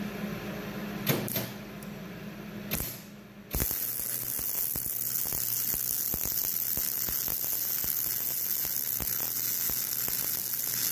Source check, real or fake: real